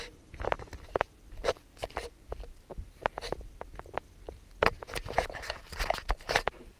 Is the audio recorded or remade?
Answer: recorded